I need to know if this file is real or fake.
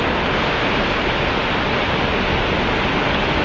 real